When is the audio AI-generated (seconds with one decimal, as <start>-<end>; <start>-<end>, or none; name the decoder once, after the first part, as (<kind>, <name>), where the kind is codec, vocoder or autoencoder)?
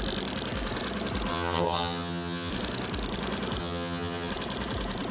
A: 1.3-2.5 (vocoder, HiFi-GAN); 3.6-4.3